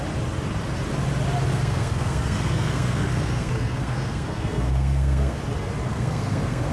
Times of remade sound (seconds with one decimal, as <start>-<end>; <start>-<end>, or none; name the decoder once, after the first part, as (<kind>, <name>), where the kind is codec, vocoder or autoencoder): 1.5-5.4 (codec, SNAC); 5.9-6.7